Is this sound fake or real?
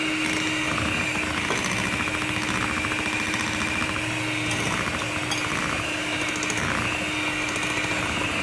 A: real